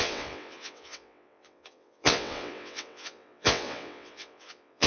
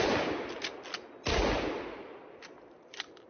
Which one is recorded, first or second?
second